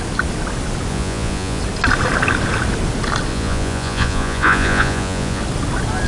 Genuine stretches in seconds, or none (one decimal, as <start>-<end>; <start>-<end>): 0.0-0.9; 1.6-3.3; 5.4-6.1